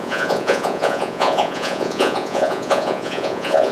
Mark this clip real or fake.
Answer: fake